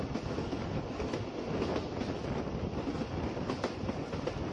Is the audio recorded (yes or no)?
yes